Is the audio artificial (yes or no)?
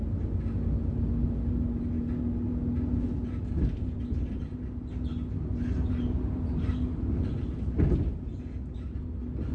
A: no